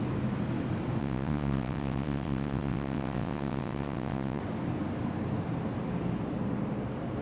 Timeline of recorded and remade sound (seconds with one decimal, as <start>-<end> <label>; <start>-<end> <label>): 0.0-1.0 recorded; 1.0-4.4 remade; 4.4-7.2 recorded